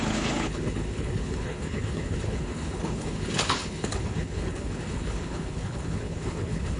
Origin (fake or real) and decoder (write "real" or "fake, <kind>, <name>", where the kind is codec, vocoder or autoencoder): fake, codec, HILCodec